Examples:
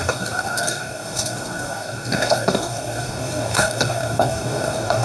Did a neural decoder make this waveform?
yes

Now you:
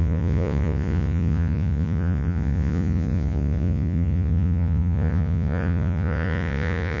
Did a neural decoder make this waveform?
yes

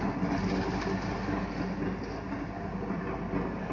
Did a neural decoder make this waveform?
no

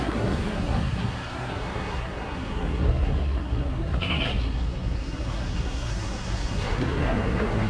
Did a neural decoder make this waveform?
yes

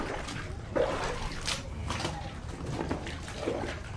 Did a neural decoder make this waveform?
no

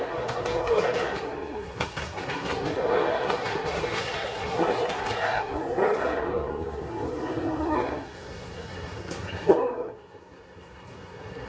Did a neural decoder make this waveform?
yes